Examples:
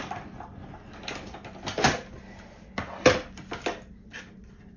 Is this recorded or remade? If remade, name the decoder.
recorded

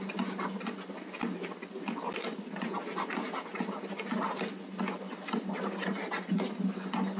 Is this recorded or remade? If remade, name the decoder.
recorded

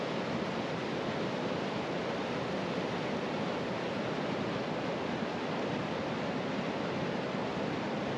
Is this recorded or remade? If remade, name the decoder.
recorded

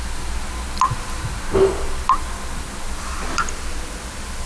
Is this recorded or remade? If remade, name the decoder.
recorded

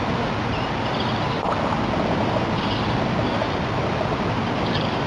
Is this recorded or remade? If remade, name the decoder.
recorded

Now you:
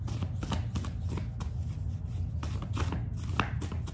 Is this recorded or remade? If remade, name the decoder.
recorded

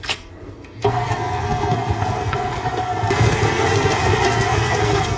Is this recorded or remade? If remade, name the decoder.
remade, codec, SNAC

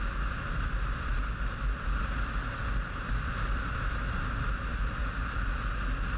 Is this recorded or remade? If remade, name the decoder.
recorded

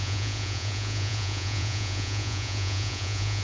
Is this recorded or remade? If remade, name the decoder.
remade, vocoder, Vocos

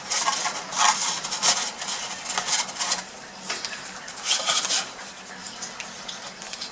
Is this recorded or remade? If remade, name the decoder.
recorded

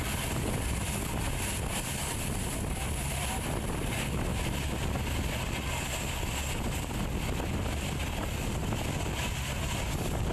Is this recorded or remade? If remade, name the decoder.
recorded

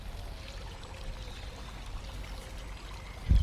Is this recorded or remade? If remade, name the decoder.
recorded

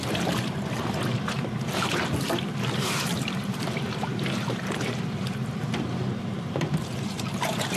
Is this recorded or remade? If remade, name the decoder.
remade, vocoder, BigVGAN v2